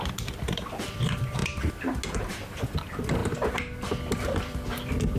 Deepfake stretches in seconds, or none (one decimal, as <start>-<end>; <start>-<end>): 0.0-1.4; 2.3-3.2; 4.4-5.2